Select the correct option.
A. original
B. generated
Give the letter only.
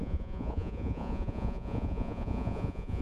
B